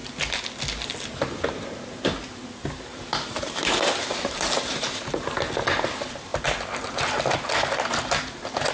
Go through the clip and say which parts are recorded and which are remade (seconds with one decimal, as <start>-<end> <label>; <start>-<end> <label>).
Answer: 0.0-2.9 recorded; 2.9-5.0 remade; 5.0-8.7 recorded